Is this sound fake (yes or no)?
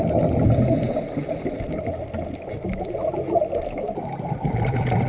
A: no